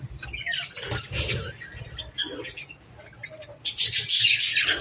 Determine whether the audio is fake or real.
real